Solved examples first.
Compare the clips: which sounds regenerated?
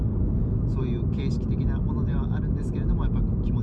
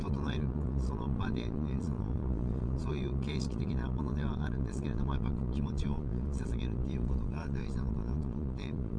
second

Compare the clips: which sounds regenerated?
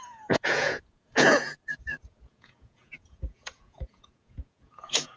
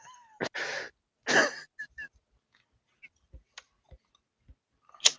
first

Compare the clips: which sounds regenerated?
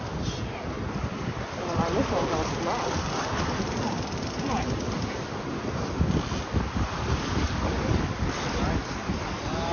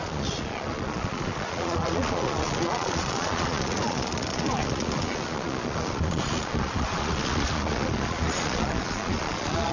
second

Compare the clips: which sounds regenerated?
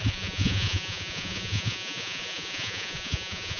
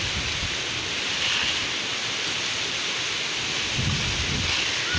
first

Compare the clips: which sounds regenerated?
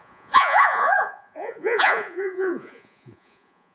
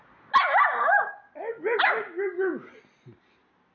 first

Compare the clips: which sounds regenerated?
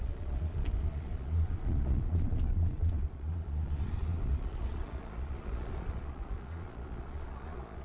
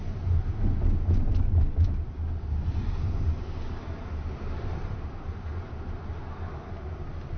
first